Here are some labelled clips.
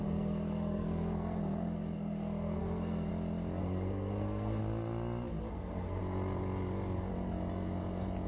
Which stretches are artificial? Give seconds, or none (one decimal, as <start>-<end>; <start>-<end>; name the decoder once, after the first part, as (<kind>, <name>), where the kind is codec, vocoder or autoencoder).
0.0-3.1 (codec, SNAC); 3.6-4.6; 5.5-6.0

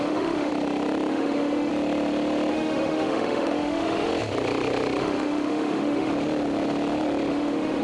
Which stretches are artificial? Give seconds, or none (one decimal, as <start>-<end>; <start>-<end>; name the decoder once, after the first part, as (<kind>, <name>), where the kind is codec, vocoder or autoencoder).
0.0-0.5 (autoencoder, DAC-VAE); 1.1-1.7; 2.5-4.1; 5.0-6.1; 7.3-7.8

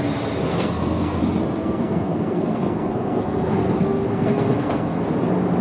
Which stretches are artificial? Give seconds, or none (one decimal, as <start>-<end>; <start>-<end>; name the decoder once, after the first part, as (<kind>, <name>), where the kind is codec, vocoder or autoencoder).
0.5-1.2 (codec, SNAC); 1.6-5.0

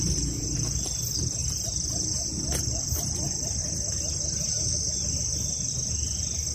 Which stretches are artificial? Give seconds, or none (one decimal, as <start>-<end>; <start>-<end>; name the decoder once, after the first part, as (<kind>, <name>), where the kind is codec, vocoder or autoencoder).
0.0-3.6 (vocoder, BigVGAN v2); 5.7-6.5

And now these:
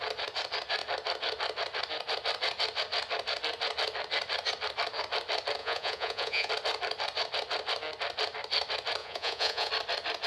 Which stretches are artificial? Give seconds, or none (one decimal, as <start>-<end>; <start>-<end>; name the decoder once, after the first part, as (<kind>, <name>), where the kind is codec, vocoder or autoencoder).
5.6-6.5 (vocoder, Vocos); 9.0-9.7